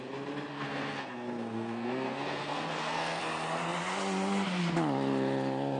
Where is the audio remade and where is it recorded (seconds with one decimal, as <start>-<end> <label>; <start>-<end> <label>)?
0.0-0.5 recorded; 0.5-3.2 remade; 3.2-5.8 recorded